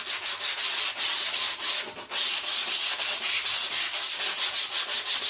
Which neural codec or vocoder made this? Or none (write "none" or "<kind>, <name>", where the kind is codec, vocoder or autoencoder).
none